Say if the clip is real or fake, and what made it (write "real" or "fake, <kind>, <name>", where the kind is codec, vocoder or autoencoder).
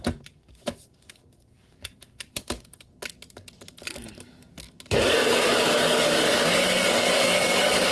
fake, codec, DAC